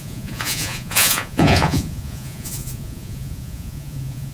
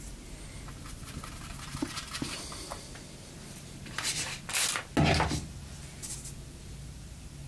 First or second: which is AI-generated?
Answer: first